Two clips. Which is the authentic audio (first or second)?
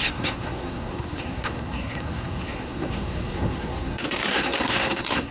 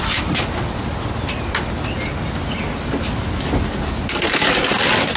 second